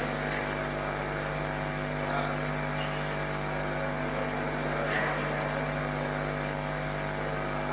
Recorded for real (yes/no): yes